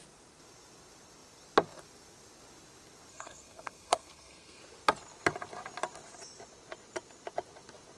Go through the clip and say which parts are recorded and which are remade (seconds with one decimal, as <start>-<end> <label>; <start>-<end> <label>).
0.0-3.1 recorded; 3.1-4.6 remade; 4.6-8.0 recorded